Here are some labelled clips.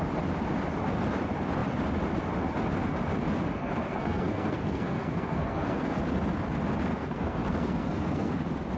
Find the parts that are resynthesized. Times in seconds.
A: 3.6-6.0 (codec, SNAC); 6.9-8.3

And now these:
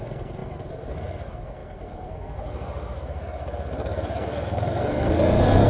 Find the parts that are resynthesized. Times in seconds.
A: 0.0-5.7 (codec, SNAC)

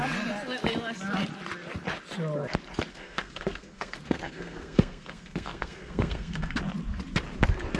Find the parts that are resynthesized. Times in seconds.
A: 2.9-6.6 (codec, SNAC)